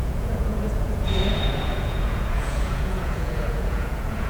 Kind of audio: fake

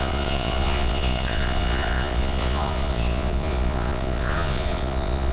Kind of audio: fake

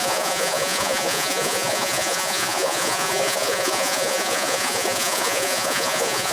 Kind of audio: fake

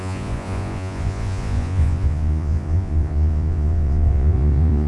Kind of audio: fake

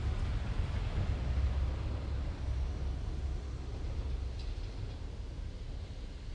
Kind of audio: real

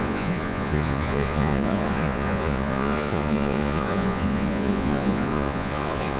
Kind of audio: fake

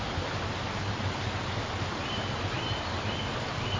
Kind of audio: real